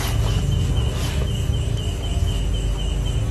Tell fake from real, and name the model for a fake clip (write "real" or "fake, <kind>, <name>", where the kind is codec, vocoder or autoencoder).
real